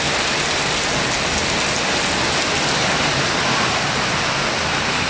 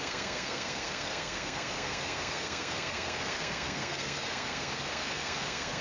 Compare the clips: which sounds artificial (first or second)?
second